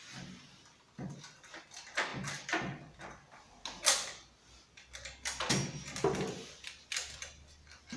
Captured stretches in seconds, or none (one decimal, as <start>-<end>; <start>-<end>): 0.0-8.0